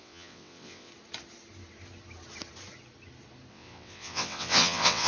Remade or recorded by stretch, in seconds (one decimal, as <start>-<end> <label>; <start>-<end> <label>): 0.0-0.9 remade; 0.9-3.5 recorded; 3.5-5.1 remade